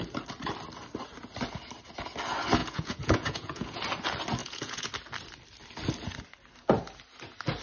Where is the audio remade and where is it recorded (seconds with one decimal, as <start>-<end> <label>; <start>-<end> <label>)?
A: 0.0-2.6 recorded; 2.6-3.8 remade; 3.8-4.4 recorded; 4.4-4.9 remade; 4.9-7.6 recorded